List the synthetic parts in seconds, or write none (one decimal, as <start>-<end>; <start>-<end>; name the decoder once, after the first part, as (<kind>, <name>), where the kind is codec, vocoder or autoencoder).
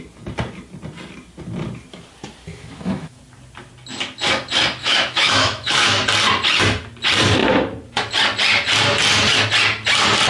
2.5-3.2 (autoencoder, DAC-VAE); 4.8-6.0